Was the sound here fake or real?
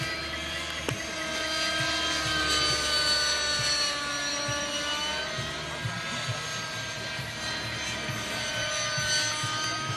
real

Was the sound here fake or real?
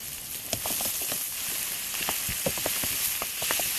real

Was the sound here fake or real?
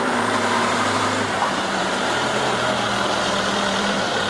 fake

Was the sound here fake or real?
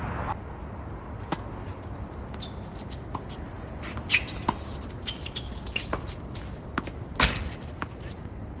real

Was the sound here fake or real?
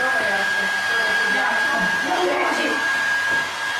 real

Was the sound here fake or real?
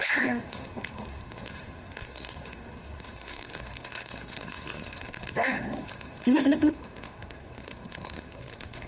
fake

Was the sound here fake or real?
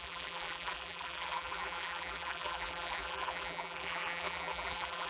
fake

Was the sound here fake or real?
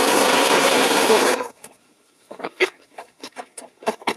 fake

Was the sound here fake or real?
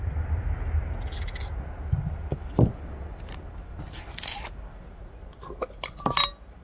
real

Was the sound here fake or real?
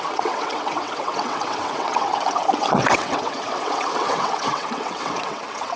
fake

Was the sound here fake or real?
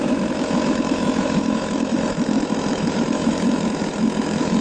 fake